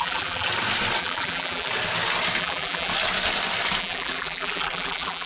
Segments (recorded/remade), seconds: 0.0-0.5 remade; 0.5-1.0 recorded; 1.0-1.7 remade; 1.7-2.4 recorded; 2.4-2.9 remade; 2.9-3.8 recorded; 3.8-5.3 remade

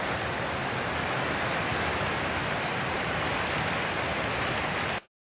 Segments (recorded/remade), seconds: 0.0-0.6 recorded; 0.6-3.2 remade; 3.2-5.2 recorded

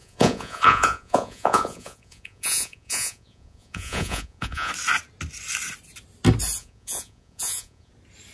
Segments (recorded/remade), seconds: 0.0-4.7 remade; 4.7-6.6 recorded; 6.6-7.9 remade; 7.9-8.3 recorded